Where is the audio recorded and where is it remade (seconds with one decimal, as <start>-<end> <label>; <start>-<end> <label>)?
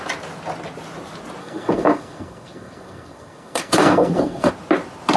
0.0-1.4 recorded; 1.4-4.5 remade; 4.5-5.2 recorded